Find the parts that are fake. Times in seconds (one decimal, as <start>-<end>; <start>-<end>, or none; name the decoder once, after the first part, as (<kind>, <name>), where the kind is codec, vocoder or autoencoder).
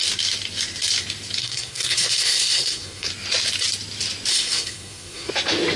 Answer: 1.4-3.1 (codec, SNAC); 4.3-5.3